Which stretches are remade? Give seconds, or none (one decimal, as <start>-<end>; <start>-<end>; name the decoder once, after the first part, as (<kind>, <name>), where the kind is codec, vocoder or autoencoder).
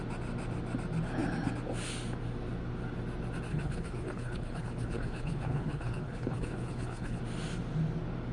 3.5-7.2 (codec, HILCodec)